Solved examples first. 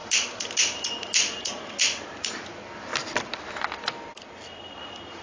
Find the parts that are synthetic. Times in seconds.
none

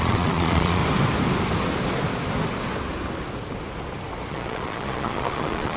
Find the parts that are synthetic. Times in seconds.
0.0-0.8 (vocoder, Vocos); 4.3-5.8